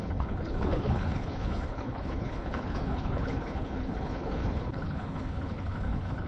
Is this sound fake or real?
fake